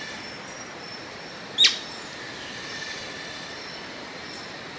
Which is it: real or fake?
real